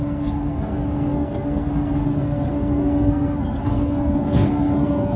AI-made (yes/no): yes